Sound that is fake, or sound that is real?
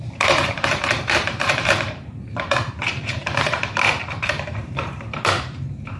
fake